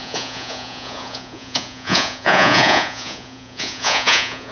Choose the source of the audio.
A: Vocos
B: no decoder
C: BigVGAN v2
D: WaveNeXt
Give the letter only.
A